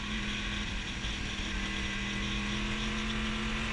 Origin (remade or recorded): recorded